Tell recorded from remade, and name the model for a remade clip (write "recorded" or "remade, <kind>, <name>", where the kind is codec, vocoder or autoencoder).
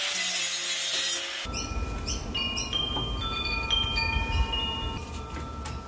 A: recorded